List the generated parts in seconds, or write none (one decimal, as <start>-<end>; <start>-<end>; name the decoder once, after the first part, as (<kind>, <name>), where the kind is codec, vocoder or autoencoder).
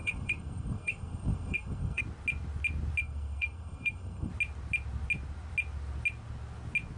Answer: 0.0-2.0 (codec, SNAC); 3.0-4.3